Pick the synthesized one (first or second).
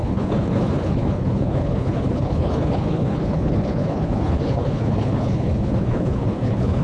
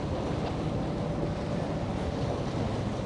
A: first